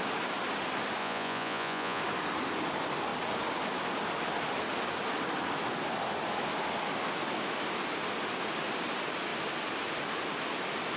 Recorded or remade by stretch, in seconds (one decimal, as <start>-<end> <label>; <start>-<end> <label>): 0.0-1.0 recorded; 1.0-2.0 remade; 2.0-11.0 recorded